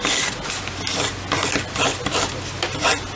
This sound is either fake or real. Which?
real